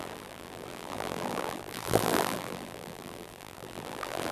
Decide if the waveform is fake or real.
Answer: fake